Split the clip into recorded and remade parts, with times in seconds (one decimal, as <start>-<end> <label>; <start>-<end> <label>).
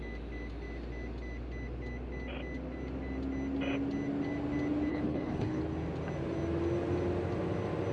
0.0-4.9 recorded; 4.9-5.6 remade; 5.6-7.9 recorded